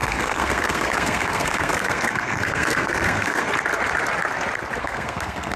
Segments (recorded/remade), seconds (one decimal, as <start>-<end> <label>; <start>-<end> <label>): 0.0-3.5 remade; 3.5-4.8 recorded; 4.8-5.6 remade